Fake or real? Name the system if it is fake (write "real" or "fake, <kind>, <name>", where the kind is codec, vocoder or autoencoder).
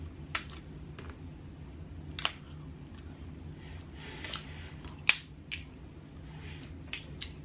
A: real